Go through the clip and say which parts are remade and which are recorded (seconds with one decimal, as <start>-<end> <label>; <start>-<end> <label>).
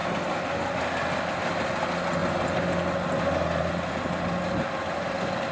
0.0-5.5 recorded